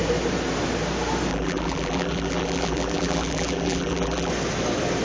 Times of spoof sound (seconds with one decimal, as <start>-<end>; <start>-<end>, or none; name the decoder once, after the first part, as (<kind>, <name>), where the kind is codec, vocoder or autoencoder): 1.3-4.3 (vocoder, BigVGAN v2)